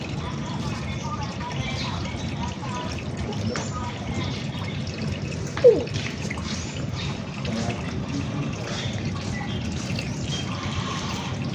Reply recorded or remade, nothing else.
remade